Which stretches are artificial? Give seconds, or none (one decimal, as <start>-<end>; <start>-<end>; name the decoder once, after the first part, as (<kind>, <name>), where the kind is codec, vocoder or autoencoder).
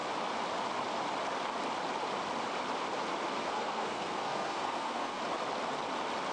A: 3.4-5.2 (codec, SNAC)